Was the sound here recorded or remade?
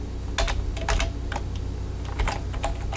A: recorded